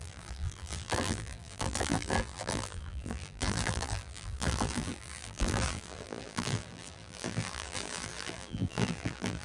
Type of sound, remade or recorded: remade